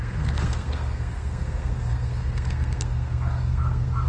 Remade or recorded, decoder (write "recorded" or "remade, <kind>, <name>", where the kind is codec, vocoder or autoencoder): remade, codec, SNAC